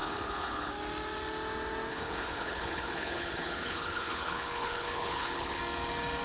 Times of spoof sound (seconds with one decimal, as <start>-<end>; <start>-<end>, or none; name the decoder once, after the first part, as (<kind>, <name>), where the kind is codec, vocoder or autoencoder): 0.0-0.7 (codec, HILCodec); 1.9-5.6